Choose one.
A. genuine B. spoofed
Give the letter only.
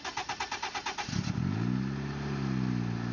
A